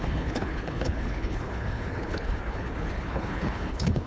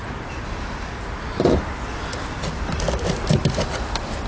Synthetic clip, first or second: first